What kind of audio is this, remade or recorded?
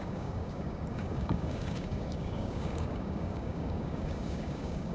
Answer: remade